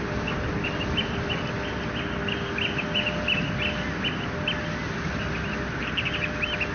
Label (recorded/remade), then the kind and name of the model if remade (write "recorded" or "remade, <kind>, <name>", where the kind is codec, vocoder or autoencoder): recorded